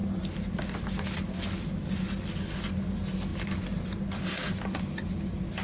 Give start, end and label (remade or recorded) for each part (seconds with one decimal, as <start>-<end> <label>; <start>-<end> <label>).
0.0-5.6 recorded